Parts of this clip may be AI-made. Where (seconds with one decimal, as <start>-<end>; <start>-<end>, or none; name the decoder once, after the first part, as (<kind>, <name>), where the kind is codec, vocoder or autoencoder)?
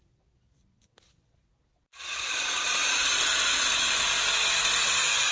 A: 0.0-4.1 (vocoder, Vocos); 4.8-5.3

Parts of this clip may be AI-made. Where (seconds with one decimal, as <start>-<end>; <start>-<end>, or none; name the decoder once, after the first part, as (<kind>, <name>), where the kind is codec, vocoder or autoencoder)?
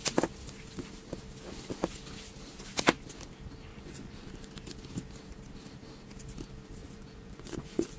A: 3.7-4.3 (vocoder, Vocos); 6.8-8.0